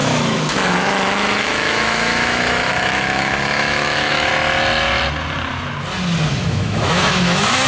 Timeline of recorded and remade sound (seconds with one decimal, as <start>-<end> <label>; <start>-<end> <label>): 0.0-4.3 remade; 4.3-6.3 recorded; 6.3-7.7 remade